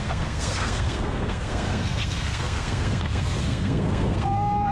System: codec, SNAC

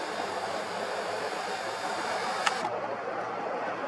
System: none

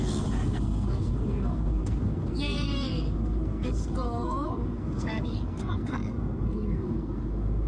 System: codec, SNAC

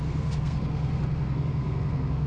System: codec, SNAC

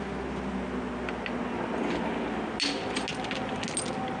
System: none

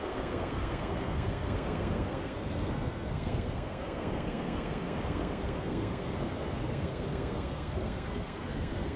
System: codec, SNAC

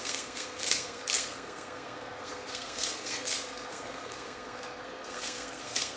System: codec, SNAC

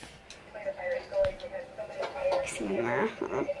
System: none